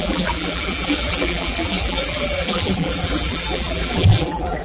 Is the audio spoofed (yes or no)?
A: yes